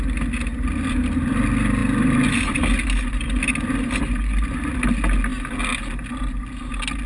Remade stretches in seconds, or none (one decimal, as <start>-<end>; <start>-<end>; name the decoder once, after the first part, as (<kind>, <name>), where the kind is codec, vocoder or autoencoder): none